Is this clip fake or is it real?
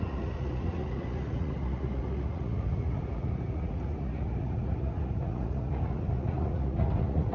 fake